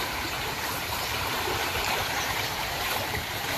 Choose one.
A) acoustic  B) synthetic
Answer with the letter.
B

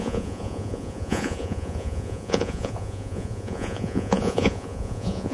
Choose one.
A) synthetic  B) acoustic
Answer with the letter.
A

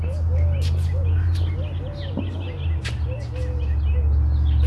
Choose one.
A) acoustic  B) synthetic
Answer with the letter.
A